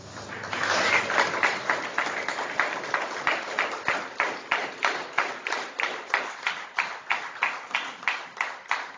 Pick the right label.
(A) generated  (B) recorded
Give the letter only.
B